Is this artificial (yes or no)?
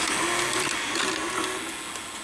no